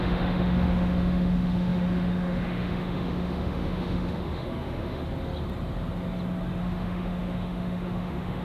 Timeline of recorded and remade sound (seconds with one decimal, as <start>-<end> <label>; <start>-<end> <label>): 0.0-5.0 remade; 5.0-6.6 recorded; 6.6-8.4 remade